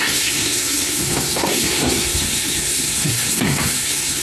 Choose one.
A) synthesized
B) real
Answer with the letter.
A